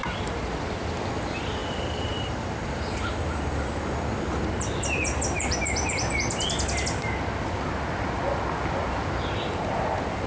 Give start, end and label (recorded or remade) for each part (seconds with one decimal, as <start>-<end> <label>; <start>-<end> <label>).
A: 0.0-0.9 remade; 0.9-1.6 recorded; 1.6-6.1 remade; 6.1-10.3 recorded